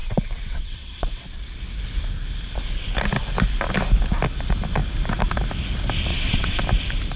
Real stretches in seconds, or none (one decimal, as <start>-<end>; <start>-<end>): 1.3-6.1; 6.6-7.2

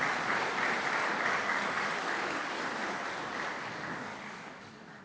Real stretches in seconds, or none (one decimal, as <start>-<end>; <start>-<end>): 0.0-1.0; 2.6-4.1

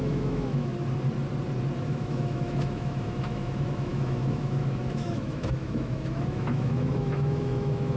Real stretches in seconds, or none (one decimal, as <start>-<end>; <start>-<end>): 0.7-1.8

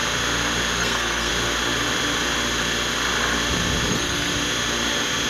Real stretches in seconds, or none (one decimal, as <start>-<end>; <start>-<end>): 0.0-0.8; 1.3-3.9; 4.3-5.3

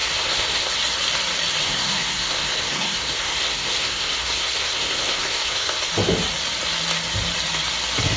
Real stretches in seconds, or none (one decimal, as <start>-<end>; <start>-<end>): 0.7-1.6; 5.9-8.2

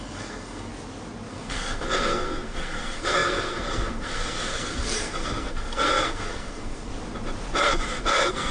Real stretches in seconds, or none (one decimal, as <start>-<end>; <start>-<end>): 0.7-1.3; 6.9-7.6

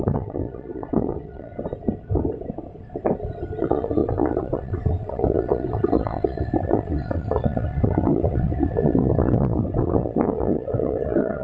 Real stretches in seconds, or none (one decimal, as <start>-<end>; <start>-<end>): 1.5-3.6